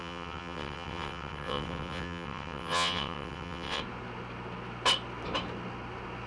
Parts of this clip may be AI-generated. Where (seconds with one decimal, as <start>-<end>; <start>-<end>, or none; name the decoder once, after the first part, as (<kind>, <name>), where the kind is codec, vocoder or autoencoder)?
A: 0.0-3.8 (vocoder, WaveNeXt)